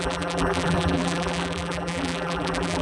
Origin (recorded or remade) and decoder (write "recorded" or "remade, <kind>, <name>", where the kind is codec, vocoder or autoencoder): remade, vocoder, BigVGAN v2